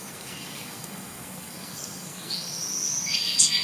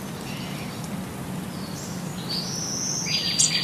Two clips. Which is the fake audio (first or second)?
first